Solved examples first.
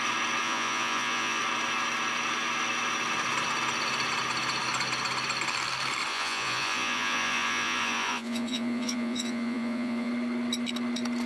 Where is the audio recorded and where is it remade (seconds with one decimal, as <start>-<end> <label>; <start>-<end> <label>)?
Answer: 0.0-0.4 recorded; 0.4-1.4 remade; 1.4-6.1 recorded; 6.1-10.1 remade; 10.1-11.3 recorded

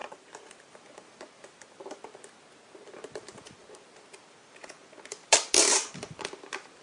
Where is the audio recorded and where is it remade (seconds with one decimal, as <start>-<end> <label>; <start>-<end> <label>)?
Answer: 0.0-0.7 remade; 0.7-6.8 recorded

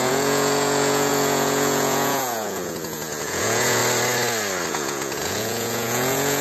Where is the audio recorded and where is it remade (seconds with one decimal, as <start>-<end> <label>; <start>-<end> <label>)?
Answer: 0.0-3.8 remade; 3.8-4.7 recorded; 4.7-6.4 remade

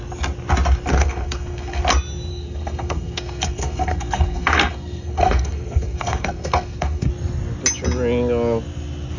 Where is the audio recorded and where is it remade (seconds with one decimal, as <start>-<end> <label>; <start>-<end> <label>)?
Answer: 0.0-0.9 recorded; 0.9-1.8 remade; 1.8-2.3 recorded; 2.3-7.1 remade; 7.1-9.2 recorded

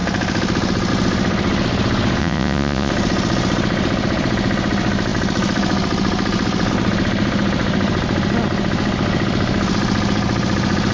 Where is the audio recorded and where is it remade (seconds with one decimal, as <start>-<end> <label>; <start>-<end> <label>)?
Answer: 0.0-2.2 recorded; 2.2-2.9 remade; 2.9-10.9 recorded

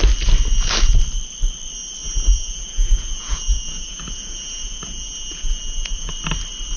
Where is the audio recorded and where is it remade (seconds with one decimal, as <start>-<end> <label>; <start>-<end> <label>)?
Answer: 0.0-2.0 recorded; 2.0-6.1 remade; 6.1-6.8 recorded

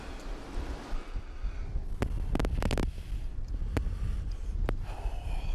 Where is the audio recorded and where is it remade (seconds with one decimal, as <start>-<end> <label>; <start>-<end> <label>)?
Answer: 0.0-1.7 recorded; 1.7-5.0 remade; 5.0-5.5 recorded